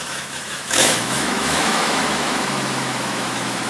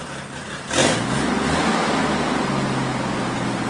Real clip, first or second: second